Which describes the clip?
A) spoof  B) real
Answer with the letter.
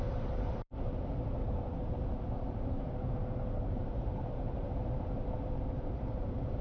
A